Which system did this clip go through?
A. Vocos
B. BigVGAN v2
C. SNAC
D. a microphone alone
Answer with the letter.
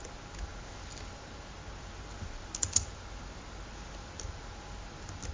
D